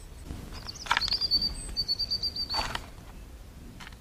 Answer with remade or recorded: recorded